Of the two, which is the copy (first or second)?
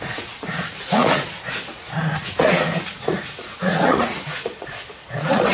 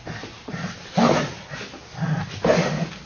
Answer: first